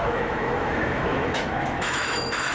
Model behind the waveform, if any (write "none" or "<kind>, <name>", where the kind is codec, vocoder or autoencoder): autoencoder, DAC-VAE